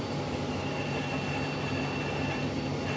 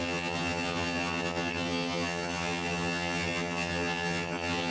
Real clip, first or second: first